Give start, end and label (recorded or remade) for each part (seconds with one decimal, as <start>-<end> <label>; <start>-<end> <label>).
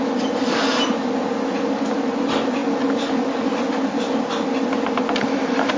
0.0-5.8 recorded